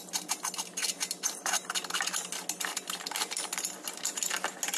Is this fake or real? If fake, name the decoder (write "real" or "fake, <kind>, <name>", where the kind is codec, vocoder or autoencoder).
real